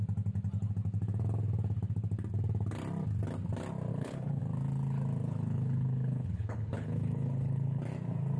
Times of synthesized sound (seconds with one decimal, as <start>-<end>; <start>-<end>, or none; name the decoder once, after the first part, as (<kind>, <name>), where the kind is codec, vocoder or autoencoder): 3.9-4.4 (codec, HILCodec); 5.2-7.8